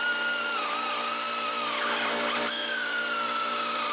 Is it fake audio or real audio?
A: real